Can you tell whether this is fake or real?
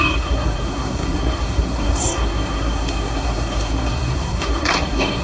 fake